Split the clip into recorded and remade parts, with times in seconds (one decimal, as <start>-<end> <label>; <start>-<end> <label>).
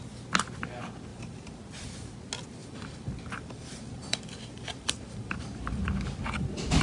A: 0.0-1.1 recorded; 1.1-1.6 remade; 1.6-2.6 recorded; 2.6-5.8 remade; 5.8-6.8 recorded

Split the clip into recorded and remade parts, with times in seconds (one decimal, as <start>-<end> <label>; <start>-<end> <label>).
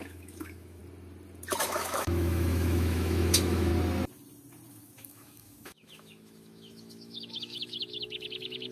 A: 0.0-0.8 remade; 0.8-1.6 recorded; 1.6-3.7 remade; 3.7-4.7 recorded; 4.7-8.7 remade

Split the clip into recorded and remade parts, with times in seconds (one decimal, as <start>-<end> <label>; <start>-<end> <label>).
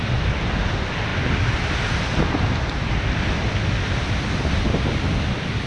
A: 0.0-5.7 recorded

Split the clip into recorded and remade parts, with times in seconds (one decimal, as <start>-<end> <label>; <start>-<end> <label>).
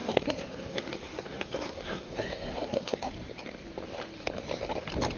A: 0.0-3.1 remade; 3.1-5.2 recorded